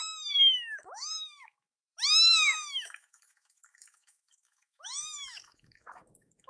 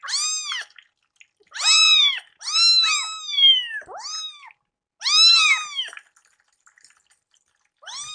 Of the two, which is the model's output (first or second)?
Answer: first